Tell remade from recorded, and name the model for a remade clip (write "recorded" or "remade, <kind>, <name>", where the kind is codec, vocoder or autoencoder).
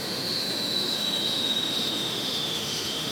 remade, autoencoder, DAC-VAE